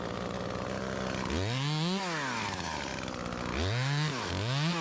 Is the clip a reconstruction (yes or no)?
no